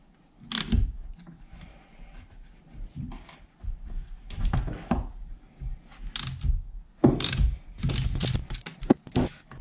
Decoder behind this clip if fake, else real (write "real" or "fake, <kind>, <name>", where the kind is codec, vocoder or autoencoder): real